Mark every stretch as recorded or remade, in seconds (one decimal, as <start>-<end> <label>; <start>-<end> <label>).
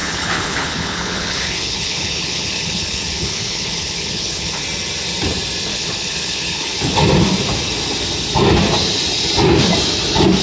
0.0-4.6 remade; 4.6-5.7 recorded; 5.7-6.8 remade; 6.8-10.4 recorded